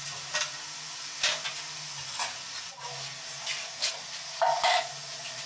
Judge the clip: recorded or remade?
recorded